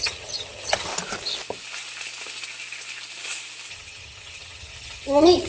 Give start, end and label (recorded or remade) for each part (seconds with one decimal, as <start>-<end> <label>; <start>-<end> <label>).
0.0-0.9 remade; 0.9-3.7 recorded; 3.7-5.5 remade

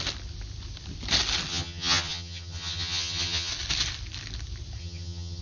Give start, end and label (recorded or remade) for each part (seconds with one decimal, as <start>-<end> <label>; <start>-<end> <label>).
0.0-1.5 recorded; 1.5-3.5 remade; 3.5-4.8 recorded; 4.8-5.4 remade

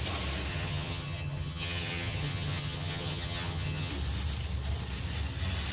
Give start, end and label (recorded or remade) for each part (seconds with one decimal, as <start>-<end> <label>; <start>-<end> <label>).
0.0-0.5 recorded; 0.5-3.9 remade; 3.9-5.7 recorded

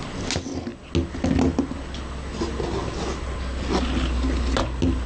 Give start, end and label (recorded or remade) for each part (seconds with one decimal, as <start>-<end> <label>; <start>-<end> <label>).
0.0-5.1 recorded

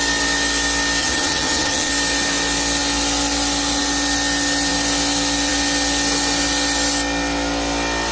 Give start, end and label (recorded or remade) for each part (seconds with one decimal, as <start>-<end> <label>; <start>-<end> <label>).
0.0-1.0 recorded; 1.0-1.9 remade; 1.9-8.1 recorded

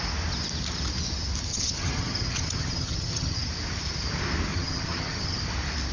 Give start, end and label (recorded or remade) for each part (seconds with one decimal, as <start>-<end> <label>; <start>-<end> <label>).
0.0-1.5 recorded; 1.5-3.4 remade; 3.4-4.5 recorded; 4.5-5.4 remade; 5.4-5.9 recorded